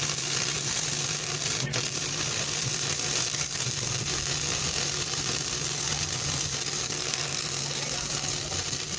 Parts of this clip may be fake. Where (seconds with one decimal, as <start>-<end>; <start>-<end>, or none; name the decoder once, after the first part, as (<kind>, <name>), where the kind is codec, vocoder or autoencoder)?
6.8-7.4 (codec, SNAC)